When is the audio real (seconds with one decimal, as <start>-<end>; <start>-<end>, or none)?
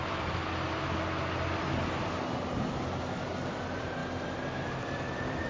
0.4-3.5; 4.0-4.7